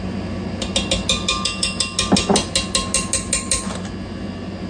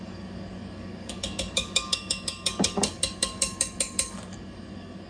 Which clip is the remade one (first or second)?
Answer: second